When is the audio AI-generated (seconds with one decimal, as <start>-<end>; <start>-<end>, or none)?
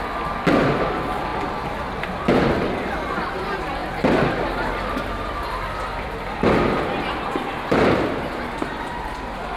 none